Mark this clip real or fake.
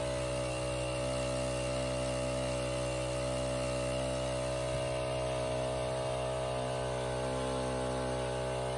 real